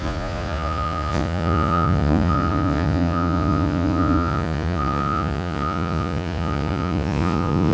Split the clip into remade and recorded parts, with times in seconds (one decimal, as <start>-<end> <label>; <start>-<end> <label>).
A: 0.0-7.7 remade